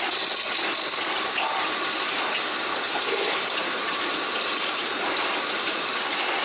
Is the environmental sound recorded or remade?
remade